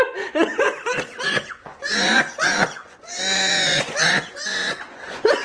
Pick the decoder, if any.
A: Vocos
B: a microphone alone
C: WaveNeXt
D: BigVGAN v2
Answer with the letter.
A